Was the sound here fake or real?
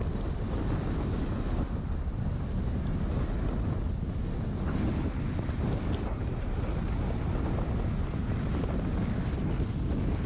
real